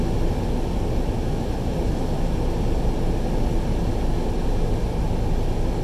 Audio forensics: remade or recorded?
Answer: recorded